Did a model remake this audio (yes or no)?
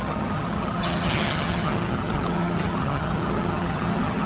yes